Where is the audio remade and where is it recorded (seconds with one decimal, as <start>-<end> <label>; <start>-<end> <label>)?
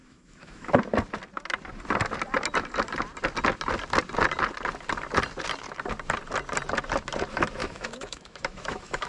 0.0-0.8 remade; 0.8-7.6 recorded; 7.6-9.1 remade